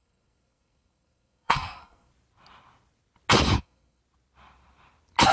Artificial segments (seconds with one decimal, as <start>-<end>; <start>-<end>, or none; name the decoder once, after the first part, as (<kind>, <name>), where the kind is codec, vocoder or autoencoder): 0.0-2.1 (codec, SNAC); 3.6-4.0